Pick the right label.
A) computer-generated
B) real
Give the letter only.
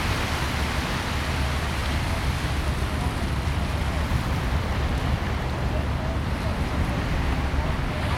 B